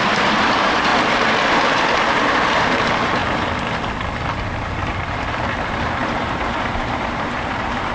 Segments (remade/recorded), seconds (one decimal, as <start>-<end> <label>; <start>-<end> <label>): 0.0-0.9 remade; 0.9-1.5 recorded; 1.5-3.2 remade; 3.2-4.3 recorded; 4.3-7.9 remade